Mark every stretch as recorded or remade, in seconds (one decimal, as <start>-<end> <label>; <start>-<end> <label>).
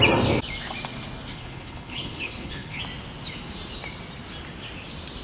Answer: 0.0-1.3 recorded; 1.3-2.8 remade; 2.8-5.2 recorded